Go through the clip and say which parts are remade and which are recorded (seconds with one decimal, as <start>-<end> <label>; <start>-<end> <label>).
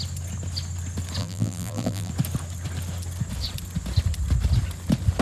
0.0-1.2 recorded; 1.2-2.1 remade; 2.1-5.2 recorded